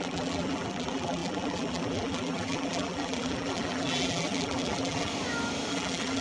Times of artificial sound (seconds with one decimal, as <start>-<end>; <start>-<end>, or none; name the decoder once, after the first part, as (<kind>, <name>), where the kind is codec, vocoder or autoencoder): 0.0-5.1 (vocoder, BigVGAN v2); 5.7-6.2